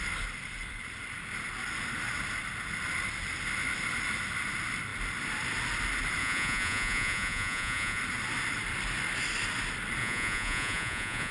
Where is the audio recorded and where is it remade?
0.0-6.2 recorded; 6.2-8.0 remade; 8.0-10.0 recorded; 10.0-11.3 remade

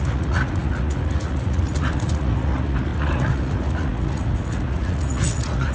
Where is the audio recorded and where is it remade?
0.0-5.7 remade

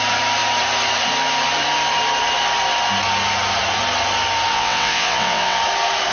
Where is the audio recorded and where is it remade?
0.0-4.5 recorded; 4.5-5.6 remade; 5.6-6.1 recorded

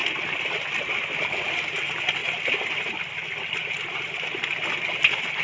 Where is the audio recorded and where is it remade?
0.0-0.8 recorded; 0.8-2.2 remade; 2.2-4.8 recorded; 4.8-5.4 remade

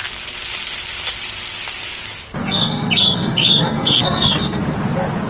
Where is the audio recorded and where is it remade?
0.0-2.4 recorded; 2.4-4.6 remade; 4.6-5.3 recorded

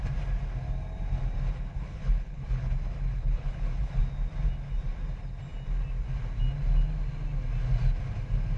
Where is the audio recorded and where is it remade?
0.0-1.7 recorded; 1.7-2.6 remade; 2.6-3.1 recorded; 3.1-4.0 remade; 4.0-8.6 recorded

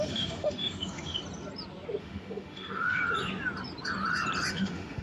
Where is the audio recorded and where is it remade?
0.0-1.2 remade; 1.2-2.0 recorded; 2.0-3.0 remade; 3.0-4.5 recorded; 4.5-5.0 remade